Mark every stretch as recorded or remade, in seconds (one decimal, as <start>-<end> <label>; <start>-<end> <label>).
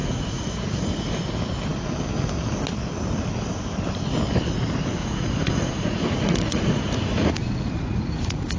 0.0-1.2 remade; 1.2-5.0 recorded; 5.0-8.6 remade